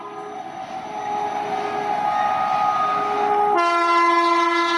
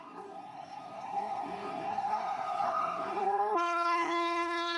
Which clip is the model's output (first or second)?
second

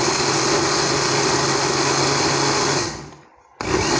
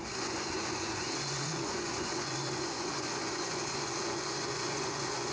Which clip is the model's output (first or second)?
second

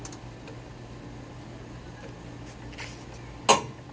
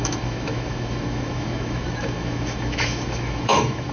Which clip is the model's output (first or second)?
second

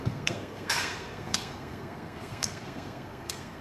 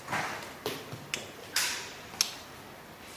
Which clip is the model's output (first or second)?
first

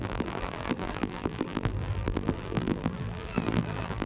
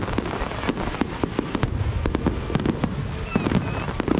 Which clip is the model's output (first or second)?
first